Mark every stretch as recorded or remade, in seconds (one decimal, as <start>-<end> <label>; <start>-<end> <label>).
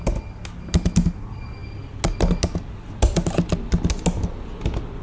0.0-5.0 recorded